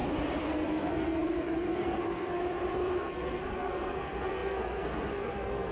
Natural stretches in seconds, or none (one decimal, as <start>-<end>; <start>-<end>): 0.0-0.5; 2.4-2.9